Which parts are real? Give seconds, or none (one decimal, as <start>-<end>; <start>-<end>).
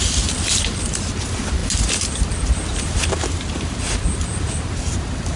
0.0-5.4